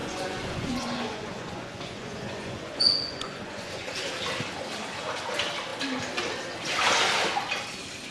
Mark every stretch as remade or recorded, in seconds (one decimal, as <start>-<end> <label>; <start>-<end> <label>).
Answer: 0.0-3.9 remade; 3.9-8.1 recorded